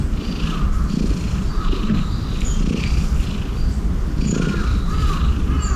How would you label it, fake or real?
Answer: real